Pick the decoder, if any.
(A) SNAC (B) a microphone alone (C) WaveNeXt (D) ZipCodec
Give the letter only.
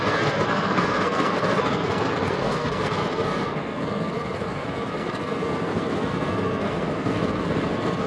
A